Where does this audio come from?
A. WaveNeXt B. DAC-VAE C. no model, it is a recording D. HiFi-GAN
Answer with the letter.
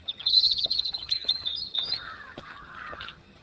D